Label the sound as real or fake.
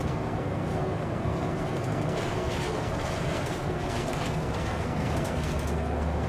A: fake